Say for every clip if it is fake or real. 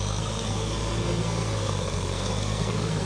fake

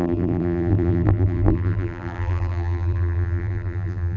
fake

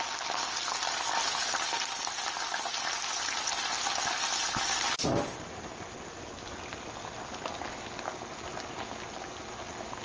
real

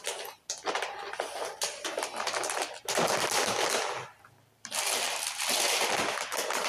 real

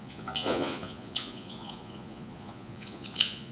fake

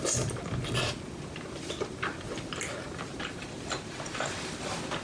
fake